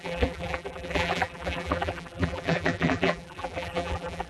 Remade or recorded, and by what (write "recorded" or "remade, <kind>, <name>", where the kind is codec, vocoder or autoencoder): remade, vocoder, BigVGAN v2